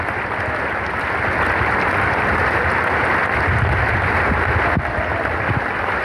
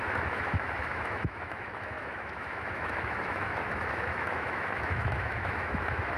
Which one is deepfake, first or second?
second